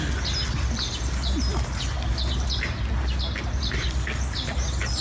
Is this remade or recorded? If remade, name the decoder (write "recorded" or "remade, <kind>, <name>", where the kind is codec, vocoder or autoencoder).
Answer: recorded